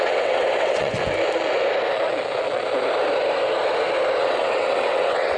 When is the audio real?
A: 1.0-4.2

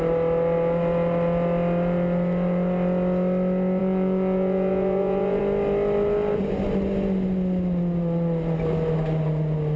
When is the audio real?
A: 0.0-3.8; 5.4-9.8

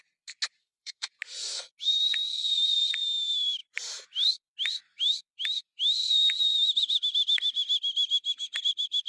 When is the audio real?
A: 0.0-0.6; 1.1-9.1

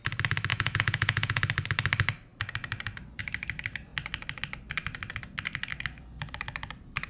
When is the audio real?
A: 0.0-0.5; 1.4-7.1

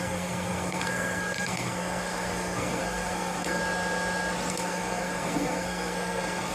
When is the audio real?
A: 3.6-4.5

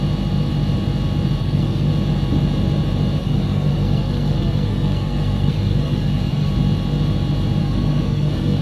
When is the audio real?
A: 0.0-1.4; 1.9-3.2; 6.5-7.6

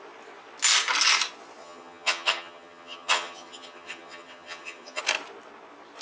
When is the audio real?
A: 0.0-1.6; 5.0-6.0